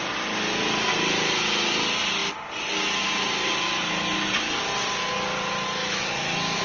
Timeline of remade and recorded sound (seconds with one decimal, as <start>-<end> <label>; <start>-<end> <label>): 0.0-5.8 recorded; 5.8-6.6 remade